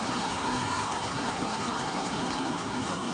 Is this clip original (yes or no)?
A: no